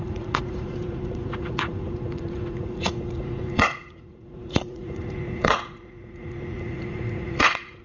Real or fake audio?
fake